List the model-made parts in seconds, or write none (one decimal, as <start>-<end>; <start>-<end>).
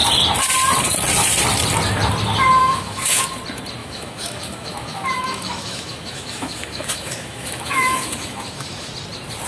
2.6-3.2; 3.8-8.9